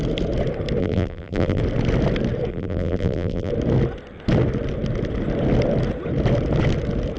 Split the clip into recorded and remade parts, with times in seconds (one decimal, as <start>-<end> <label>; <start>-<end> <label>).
0.0-0.8 recorded; 0.8-1.6 remade; 1.6-2.5 recorded; 2.5-3.5 remade; 3.5-7.2 recorded